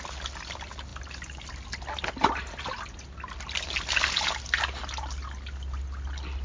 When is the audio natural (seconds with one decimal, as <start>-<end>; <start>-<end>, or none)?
0.0-6.4